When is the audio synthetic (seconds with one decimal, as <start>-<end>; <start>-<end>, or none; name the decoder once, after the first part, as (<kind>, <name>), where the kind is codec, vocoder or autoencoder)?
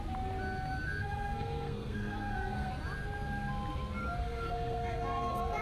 1.0-2.7 (codec, SNAC); 4.2-5.6